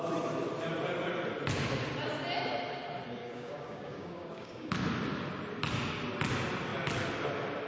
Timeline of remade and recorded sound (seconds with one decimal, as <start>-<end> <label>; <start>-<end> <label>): 0.0-3.2 recorded; 3.2-4.7 remade; 4.7-7.7 recorded